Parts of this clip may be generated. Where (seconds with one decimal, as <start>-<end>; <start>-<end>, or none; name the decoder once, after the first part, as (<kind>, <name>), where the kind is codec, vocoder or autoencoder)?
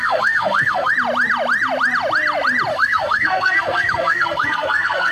0.0-0.9 (codec, SNAC); 2.7-5.1